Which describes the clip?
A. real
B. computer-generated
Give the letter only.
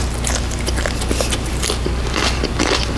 A